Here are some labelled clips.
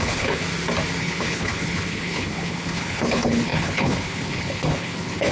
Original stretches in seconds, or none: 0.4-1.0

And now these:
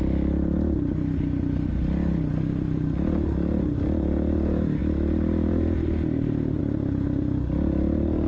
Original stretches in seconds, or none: 0.0-8.3

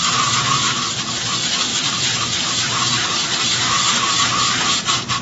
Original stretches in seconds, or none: 0.9-1.7; 4.8-5.2